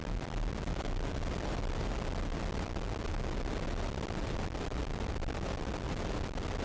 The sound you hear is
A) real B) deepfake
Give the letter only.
A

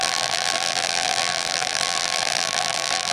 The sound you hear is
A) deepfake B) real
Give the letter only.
A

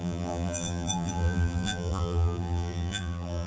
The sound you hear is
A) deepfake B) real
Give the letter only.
A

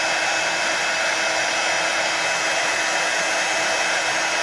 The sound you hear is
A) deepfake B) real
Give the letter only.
B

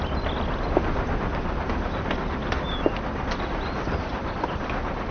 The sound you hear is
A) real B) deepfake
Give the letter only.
B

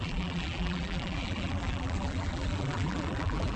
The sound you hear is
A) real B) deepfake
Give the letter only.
B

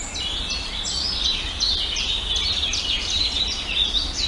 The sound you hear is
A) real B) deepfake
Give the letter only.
B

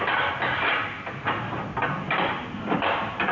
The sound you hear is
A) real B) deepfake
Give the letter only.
B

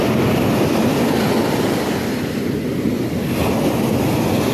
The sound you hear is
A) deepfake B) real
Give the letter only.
B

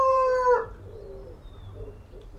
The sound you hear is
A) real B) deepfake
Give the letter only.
B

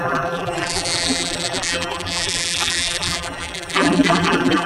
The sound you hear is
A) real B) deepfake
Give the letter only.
B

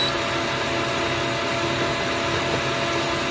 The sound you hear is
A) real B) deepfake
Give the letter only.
A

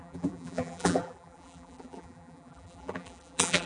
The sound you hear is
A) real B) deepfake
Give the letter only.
B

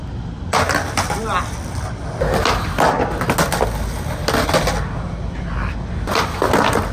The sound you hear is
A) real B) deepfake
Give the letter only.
A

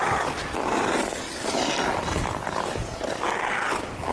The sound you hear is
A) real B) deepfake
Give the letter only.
A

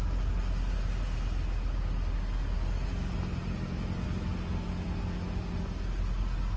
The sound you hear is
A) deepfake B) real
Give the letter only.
B